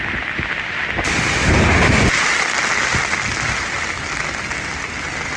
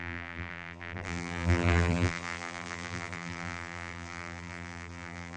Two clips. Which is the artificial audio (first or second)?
second